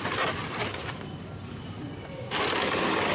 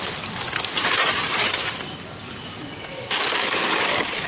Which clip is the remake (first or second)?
second